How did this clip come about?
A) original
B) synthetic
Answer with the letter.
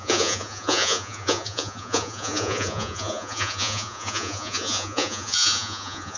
B